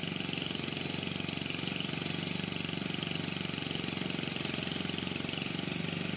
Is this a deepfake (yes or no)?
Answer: no